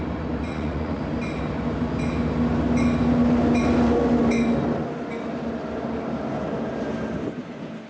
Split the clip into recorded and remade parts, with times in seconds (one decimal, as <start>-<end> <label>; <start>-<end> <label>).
0.0-0.5 recorded; 0.5-1.0 remade; 1.0-7.9 recorded